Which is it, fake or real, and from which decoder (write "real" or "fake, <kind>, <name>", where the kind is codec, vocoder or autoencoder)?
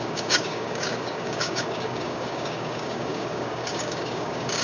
fake, codec, DAC